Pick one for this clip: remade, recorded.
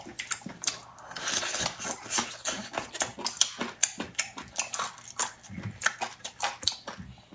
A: recorded